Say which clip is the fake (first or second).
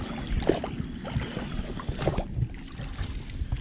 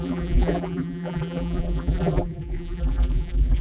second